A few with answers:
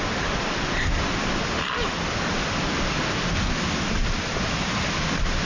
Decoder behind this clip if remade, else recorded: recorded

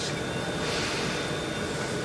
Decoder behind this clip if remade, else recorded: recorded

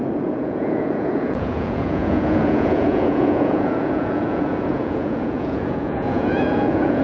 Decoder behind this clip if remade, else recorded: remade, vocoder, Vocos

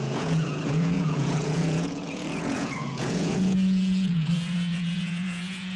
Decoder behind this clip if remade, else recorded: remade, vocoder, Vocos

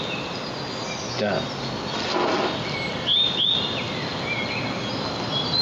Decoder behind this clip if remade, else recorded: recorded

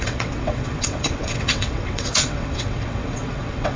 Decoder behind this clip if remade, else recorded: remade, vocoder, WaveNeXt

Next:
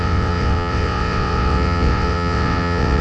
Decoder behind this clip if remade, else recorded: remade, vocoder, WaveNeXt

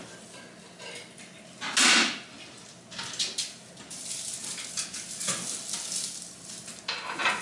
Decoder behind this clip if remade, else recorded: recorded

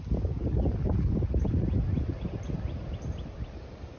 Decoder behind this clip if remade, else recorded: recorded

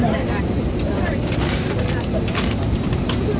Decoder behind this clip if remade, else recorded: recorded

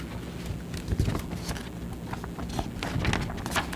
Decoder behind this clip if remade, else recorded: recorded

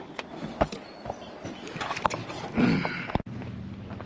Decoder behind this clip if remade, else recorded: recorded